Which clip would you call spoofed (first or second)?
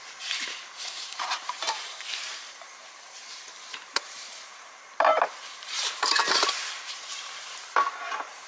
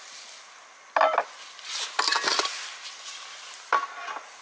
first